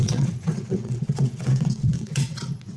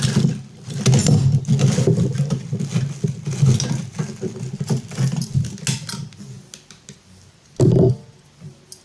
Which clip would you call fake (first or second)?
first